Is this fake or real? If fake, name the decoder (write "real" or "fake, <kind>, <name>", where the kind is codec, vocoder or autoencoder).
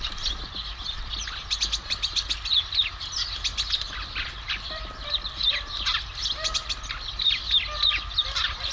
real